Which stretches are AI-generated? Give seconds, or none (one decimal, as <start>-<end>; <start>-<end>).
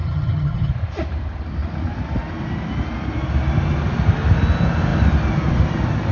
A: 0.0-0.7